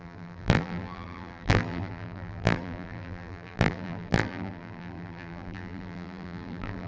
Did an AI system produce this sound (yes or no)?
yes